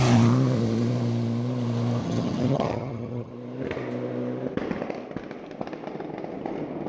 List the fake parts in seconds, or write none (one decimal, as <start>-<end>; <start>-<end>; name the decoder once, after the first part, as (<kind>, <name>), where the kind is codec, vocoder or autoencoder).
2.0-3.3 (vocoder, HiFi-GAN)